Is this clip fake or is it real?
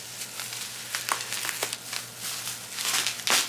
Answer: real